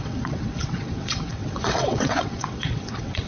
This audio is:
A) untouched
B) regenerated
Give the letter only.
B